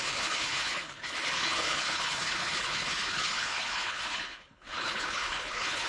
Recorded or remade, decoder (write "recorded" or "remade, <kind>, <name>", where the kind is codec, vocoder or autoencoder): remade, codec, HILCodec